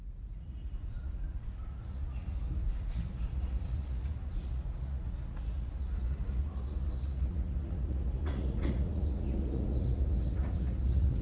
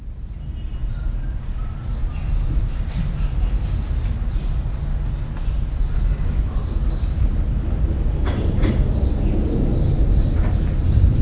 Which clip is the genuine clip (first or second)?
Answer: second